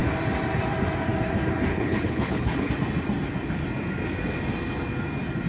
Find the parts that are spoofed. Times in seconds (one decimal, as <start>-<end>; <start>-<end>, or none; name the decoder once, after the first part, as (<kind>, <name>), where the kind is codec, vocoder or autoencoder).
1.7-2.7 (codec, HILCodec)